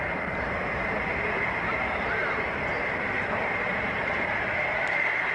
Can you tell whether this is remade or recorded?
remade